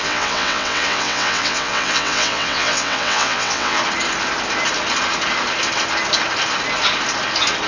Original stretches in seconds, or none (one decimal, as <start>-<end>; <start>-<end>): 3.8-7.7